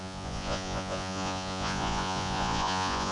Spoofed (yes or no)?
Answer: yes